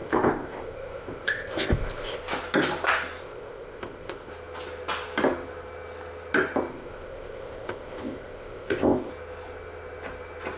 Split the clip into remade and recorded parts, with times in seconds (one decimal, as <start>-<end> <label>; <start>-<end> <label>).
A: 0.0-2.2 remade; 2.2-3.2 recorded; 3.2-4.3 remade; 4.3-6.7 recorded; 6.7-9.1 remade; 9.1-10.6 recorded

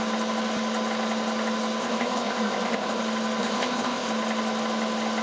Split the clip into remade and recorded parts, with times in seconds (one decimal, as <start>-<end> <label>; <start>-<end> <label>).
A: 0.0-1.8 recorded; 1.8-3.0 remade; 3.0-3.4 recorded; 3.4-4.1 remade; 4.1-5.2 recorded